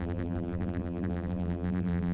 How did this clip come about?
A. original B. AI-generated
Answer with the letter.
B